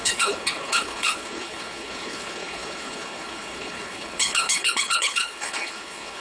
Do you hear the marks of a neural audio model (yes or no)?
yes